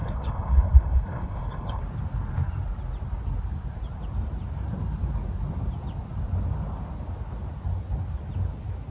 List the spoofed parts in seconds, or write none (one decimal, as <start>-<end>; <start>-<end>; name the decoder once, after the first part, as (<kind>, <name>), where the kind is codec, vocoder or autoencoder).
0.0-1.8 (codec, HILCodec)